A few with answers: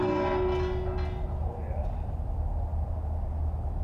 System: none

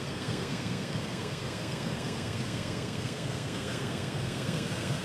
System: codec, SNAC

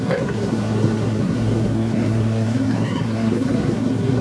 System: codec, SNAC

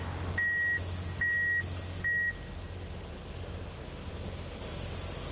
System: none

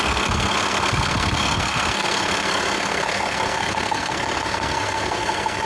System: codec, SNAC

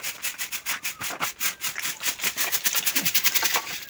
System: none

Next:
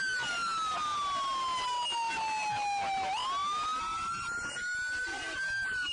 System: none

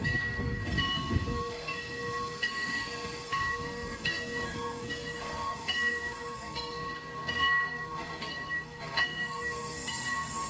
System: codec, SNAC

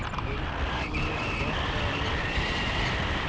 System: none